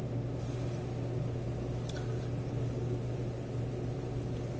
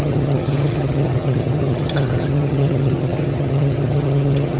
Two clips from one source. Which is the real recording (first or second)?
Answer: first